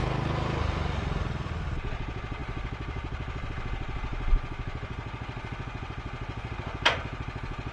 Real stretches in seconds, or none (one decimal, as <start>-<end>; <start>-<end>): 0.0-4.1; 6.5-7.7